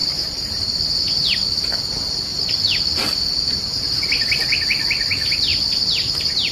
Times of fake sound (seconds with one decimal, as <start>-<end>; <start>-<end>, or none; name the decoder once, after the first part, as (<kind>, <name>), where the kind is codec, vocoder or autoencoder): 0.0-0.6 (vocoder, BigVGAN v2); 2.3-4.7; 5.5-6.1